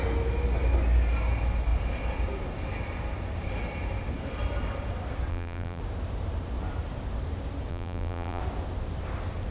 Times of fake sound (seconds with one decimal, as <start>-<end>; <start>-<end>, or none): 5.3-5.8; 7.7-8.4